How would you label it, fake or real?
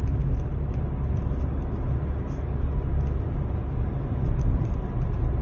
real